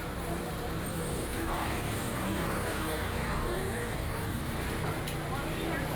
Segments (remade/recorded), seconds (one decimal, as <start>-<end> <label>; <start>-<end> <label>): 0.0-0.9 recorded; 0.9-4.5 remade; 4.5-6.0 recorded